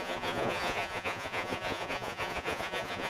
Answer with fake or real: fake